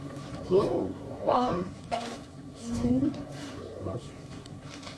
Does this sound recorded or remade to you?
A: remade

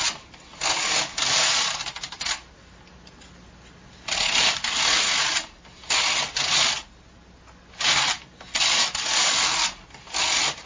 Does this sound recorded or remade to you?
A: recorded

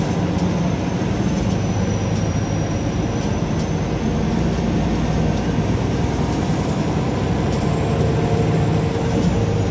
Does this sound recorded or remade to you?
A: recorded